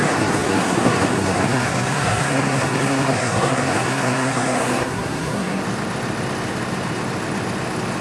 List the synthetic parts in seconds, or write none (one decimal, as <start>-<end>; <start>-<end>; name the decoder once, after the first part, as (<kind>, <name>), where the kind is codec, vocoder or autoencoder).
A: 0.0-5.6 (codec, SNAC)